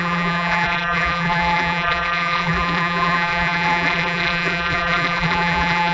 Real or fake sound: fake